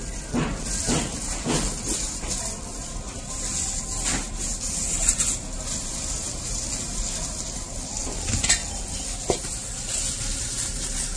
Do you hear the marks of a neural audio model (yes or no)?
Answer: no